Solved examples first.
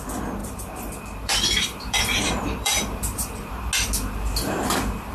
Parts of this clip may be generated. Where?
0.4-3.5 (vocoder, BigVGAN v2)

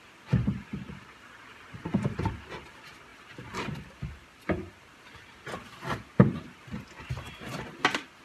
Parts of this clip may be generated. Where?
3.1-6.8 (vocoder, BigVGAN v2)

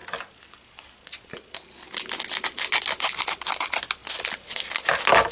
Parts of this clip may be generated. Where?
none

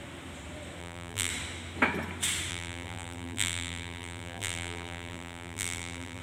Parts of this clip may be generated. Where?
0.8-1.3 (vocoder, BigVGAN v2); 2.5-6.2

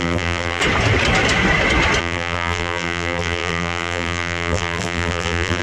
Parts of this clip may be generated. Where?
0.0-0.6 (vocoder, BigVGAN v2); 2.0-5.6